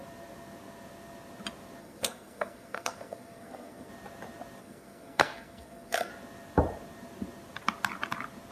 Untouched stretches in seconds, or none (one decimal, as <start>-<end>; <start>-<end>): 0.0-1.8; 3.9-4.6; 6.1-8.5